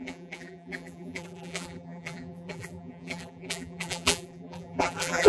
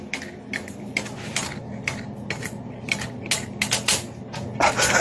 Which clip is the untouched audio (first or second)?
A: second